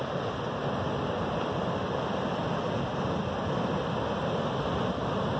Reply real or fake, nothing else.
real